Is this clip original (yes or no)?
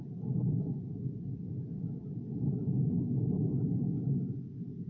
yes